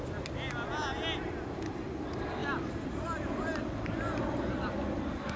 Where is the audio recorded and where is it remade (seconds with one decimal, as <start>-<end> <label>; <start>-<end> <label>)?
0.0-5.4 recorded